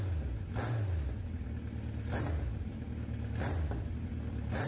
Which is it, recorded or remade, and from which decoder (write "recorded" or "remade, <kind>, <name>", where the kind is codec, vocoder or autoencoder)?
recorded